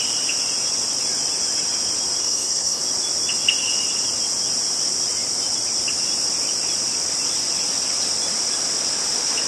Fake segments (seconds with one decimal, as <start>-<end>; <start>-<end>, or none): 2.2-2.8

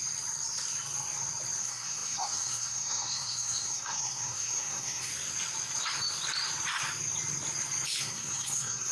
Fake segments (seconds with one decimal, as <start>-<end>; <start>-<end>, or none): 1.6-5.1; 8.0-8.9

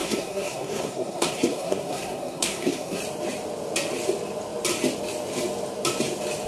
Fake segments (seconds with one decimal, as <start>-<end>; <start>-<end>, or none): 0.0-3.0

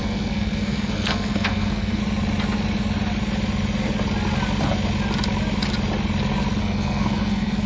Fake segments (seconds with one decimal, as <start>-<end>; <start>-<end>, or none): 0.0-2.0; 6.6-7.7

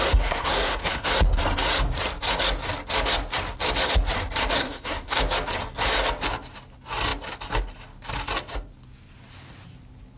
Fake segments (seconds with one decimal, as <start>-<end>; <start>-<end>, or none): 0.0-1.1; 4.6-5.2

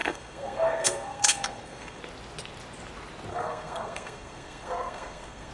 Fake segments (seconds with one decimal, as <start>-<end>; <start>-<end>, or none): 0.0-2.0; 3.3-5.5

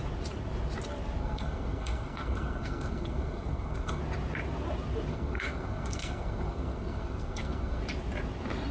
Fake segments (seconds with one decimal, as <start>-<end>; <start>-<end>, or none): 1.2-4.0; 5.1-7.8

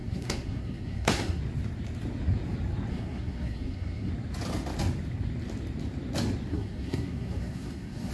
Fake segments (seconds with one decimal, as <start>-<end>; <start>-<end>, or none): 0.0-1.4; 2.9-4.1; 6.5-8.1